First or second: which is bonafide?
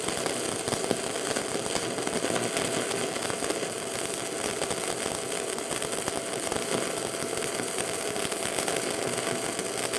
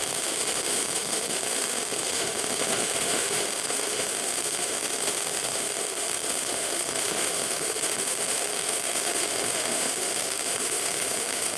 first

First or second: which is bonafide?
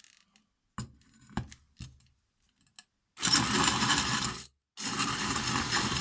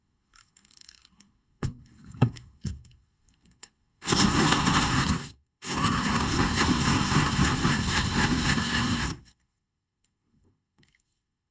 first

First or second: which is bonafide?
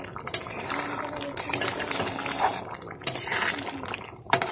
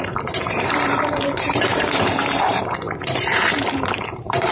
first